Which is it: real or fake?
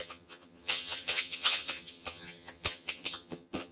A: fake